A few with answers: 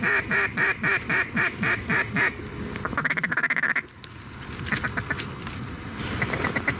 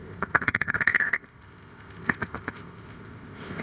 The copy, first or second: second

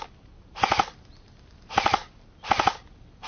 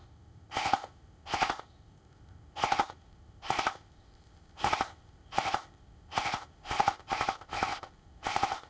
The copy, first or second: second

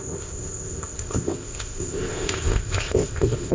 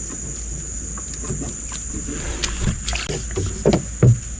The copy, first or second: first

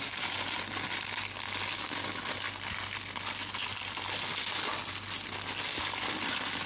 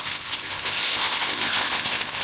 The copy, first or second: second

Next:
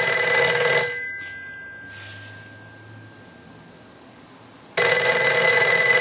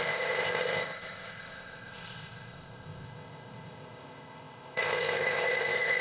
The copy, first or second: second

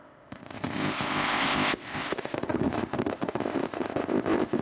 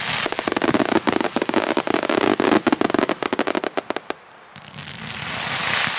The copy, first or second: first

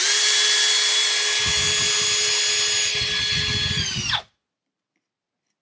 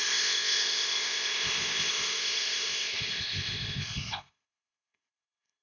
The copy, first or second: second